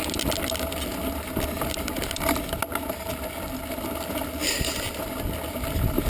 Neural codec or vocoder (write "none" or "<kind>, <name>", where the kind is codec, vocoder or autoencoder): none